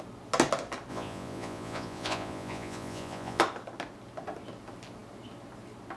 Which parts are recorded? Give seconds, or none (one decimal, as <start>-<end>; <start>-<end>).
0.0-0.9; 3.4-6.0